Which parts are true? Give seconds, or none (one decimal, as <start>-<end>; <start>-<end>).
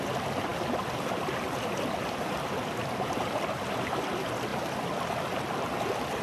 0.0-4.5; 5.1-6.2